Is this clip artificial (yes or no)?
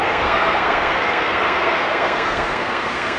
yes